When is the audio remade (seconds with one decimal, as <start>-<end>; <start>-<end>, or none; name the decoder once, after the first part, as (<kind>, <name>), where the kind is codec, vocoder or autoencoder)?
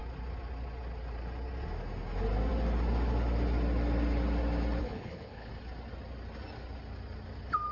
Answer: 4.8-5.5 (codec, HILCodec)